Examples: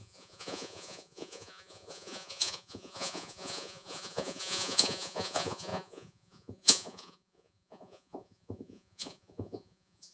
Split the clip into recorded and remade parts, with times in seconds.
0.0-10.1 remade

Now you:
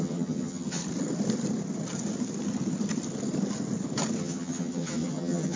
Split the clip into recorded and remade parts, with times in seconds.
0.0-0.8 remade; 0.8-4.2 recorded; 4.2-5.6 remade

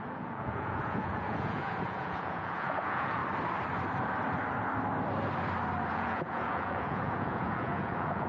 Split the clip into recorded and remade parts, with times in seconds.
0.0-3.2 remade; 3.2-5.9 recorded; 5.9-8.3 remade

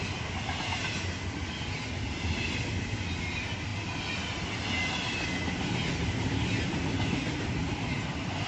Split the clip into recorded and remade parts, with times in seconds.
0.0-8.5 recorded

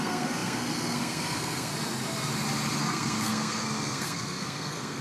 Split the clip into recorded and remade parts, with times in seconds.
0.0-1.7 remade; 1.7-2.8 recorded; 2.8-5.0 remade

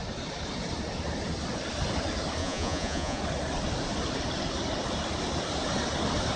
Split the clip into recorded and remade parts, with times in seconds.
0.0-2.4 recorded; 2.4-3.2 remade; 3.2-6.4 recorded

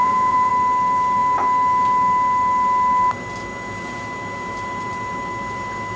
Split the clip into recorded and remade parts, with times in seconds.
0.0-0.5 remade; 0.5-6.0 recorded